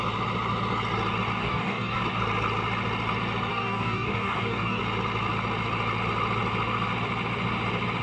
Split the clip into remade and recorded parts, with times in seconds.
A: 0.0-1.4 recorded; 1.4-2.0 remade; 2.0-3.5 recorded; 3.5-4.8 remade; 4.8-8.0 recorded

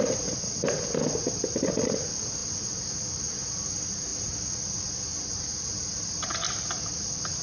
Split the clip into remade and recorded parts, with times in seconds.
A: 0.0-7.4 recorded

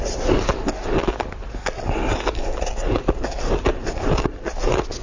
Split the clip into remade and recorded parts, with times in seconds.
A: 0.0-5.0 recorded